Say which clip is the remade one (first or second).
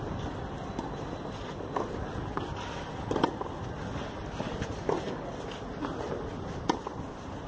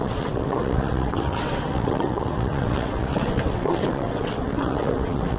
second